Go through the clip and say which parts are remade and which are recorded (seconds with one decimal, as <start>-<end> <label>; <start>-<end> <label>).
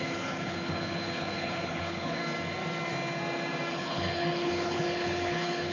0.0-2.2 remade; 2.2-3.7 recorded; 3.7-5.7 remade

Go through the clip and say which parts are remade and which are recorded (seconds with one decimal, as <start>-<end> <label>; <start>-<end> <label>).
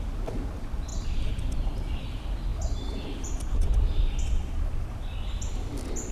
0.0-6.1 recorded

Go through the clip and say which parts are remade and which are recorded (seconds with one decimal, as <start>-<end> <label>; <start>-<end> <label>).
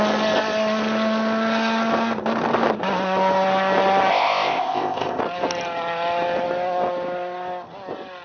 0.0-4.1 recorded; 4.1-5.2 remade; 5.2-8.2 recorded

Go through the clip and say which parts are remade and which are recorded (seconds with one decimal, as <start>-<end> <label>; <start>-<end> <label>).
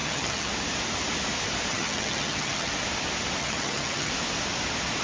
0.0-0.5 remade; 0.5-1.7 recorded; 1.7-2.7 remade; 2.7-3.4 recorded; 3.4-4.1 remade; 4.1-5.0 recorded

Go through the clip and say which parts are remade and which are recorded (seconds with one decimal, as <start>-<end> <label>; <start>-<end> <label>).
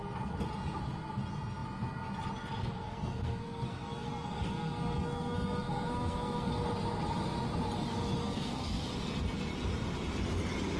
0.0-2.6 recorded; 2.6-6.5 remade; 6.5-8.2 recorded; 8.2-8.8 remade; 8.8-10.8 recorded